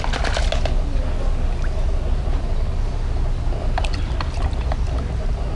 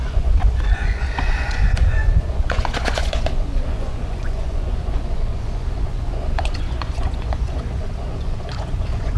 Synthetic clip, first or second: second